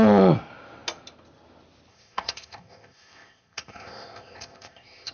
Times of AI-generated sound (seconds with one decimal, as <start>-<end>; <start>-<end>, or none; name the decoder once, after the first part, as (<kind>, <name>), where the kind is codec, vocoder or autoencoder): 1.9-5.1 (codec, ZipCodec)